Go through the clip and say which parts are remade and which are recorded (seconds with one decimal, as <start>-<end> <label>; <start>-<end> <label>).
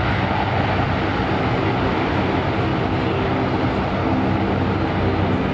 0.0-5.5 recorded